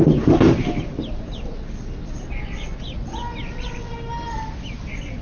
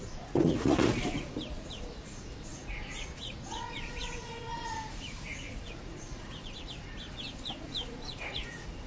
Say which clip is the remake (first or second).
second